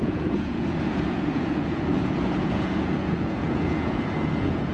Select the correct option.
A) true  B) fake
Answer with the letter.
B